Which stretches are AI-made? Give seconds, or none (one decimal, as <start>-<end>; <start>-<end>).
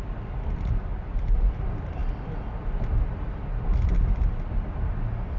0.9-1.6